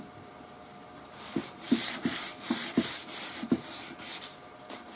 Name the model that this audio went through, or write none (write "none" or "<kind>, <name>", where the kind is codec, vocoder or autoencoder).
none